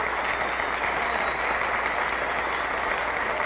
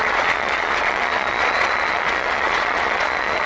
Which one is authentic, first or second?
first